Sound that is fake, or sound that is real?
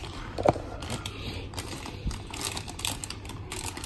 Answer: real